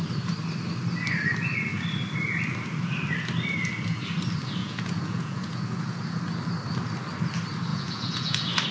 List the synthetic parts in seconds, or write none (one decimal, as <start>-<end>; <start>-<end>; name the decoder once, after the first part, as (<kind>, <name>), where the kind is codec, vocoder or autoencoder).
4.6-6.2 (vocoder, Vocos); 7.7-8.7